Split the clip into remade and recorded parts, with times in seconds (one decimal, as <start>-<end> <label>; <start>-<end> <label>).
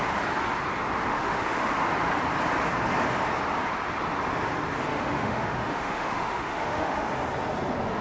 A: 0.0-1.1 recorded; 1.1-1.7 remade; 1.7-4.9 recorded; 4.9-7.1 remade; 7.1-8.0 recorded